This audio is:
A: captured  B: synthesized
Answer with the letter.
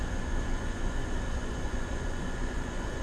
B